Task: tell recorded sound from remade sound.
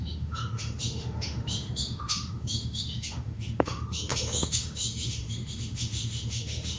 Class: remade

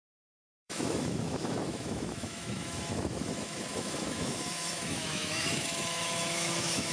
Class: remade